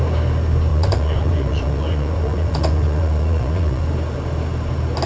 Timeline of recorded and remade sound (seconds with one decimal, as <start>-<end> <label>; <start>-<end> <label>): 0.0-0.7 recorded; 0.7-3.8 remade; 3.8-5.1 recorded